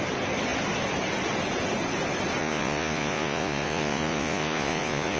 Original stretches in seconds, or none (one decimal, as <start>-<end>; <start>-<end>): 0.0-2.4